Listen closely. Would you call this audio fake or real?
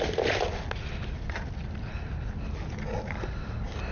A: real